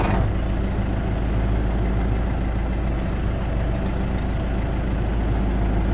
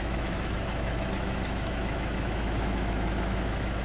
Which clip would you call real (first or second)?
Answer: first